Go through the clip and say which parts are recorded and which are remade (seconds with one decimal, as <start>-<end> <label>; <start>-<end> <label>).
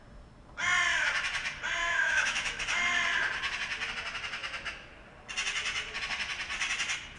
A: 0.0-1.8 recorded; 1.8-2.6 remade; 2.6-7.2 recorded